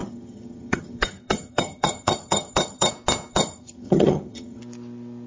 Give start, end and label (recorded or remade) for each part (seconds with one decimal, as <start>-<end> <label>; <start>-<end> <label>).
0.0-2.9 remade; 2.9-3.3 recorded; 3.3-4.6 remade; 4.6-5.3 recorded